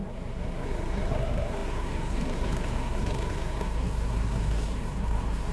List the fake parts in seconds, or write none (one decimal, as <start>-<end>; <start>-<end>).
0.0-5.5